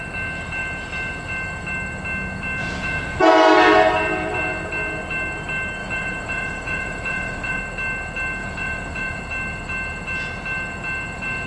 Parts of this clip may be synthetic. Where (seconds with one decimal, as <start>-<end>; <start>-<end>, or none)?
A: 2.6-3.2; 5.8-7.6; 8.4-9.2